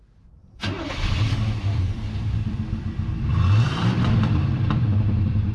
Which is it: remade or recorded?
remade